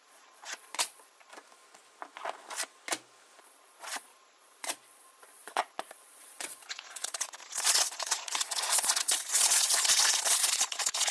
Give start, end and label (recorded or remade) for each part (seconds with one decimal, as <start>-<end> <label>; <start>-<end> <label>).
0.0-1.3 remade; 1.3-3.4 recorded; 3.4-11.1 remade